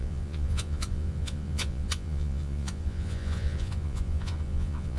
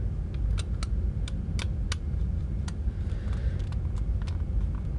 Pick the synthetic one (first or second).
first